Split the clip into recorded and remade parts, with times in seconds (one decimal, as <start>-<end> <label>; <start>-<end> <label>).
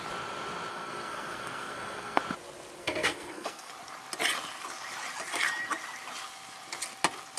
0.0-0.7 recorded; 0.7-2.2 remade; 2.2-2.8 recorded; 2.8-3.7 remade; 3.7-7.4 recorded